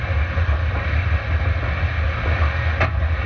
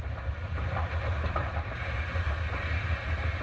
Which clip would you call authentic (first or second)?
first